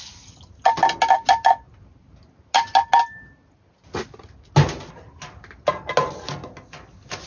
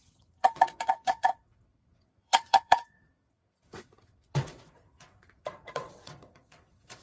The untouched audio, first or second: first